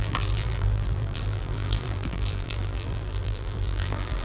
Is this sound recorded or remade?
remade